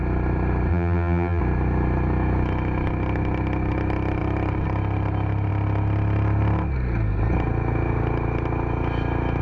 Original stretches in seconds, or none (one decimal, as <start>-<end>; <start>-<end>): 0.0-0.7; 1.4-9.4